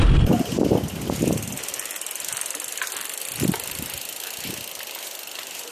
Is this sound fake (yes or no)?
no